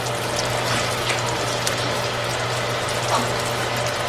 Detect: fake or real real